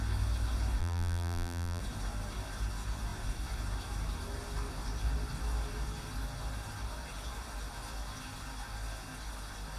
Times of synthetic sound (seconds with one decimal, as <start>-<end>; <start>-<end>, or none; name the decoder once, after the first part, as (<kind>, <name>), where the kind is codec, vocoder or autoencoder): 0.8-1.8 (vocoder, BigVGAN v2)